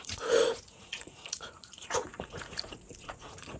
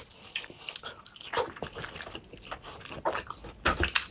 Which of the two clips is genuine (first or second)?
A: second